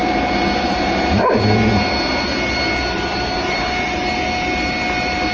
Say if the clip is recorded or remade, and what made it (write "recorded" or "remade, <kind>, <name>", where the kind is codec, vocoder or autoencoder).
recorded